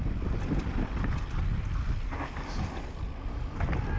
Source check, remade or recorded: recorded